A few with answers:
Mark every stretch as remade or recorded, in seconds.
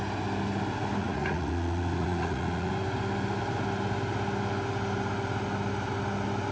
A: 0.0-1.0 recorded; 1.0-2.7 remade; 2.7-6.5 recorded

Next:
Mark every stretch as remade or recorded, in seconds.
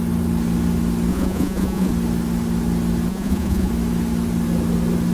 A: 0.0-1.1 recorded; 1.1-1.9 remade; 1.9-3.1 recorded; 3.1-3.7 remade; 3.7-5.1 recorded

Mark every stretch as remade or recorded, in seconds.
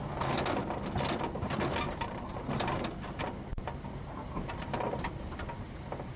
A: 0.0-6.2 recorded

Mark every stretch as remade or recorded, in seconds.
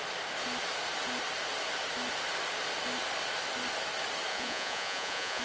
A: 0.0-4.3 recorded; 4.3-5.4 remade